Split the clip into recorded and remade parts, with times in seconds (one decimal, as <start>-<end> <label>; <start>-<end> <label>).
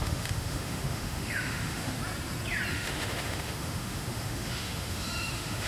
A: 0.0-2.0 remade; 2.0-2.7 recorded; 2.7-5.7 remade